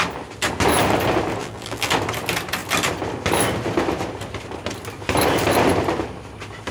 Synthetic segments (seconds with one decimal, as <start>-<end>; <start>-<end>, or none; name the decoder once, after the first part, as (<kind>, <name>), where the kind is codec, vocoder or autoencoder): 1.4-1.9 (vocoder, BigVGAN v2)